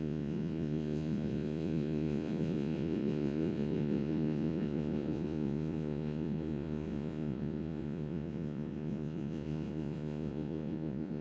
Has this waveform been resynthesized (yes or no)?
yes